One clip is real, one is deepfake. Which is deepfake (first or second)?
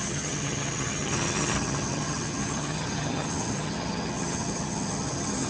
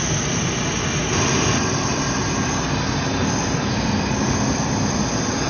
first